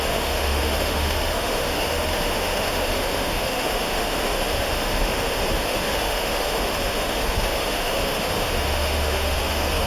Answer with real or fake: fake